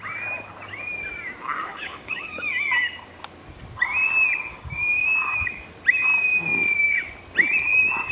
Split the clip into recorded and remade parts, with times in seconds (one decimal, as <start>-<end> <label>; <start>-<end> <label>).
0.0-1.7 recorded; 1.7-2.5 remade; 2.5-4.5 recorded; 4.5-5.5 remade; 5.5-8.1 recorded